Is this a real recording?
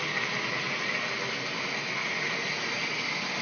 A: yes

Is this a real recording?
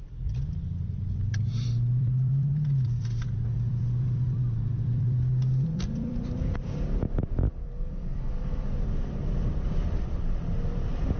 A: no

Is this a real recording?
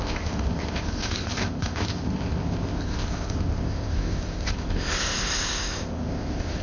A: no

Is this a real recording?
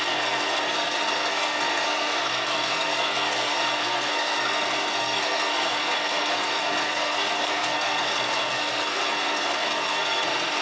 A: no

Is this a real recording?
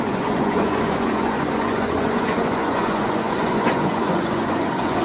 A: no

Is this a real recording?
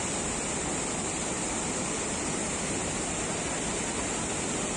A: yes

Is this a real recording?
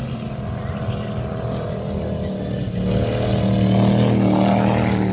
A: yes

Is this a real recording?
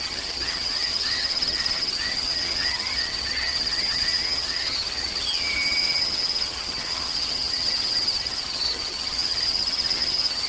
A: no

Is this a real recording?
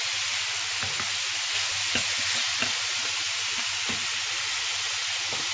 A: yes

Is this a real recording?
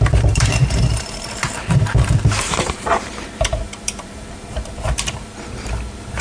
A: no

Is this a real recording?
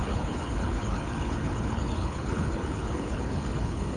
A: no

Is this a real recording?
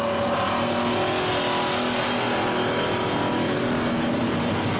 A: yes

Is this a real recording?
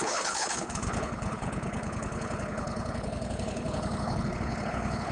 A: no